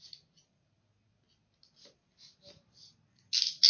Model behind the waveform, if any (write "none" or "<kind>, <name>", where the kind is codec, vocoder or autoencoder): none